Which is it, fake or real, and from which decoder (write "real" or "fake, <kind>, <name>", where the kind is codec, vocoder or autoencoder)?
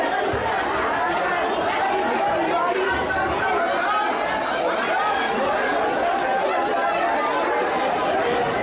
real